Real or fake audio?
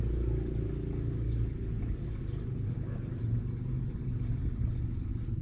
real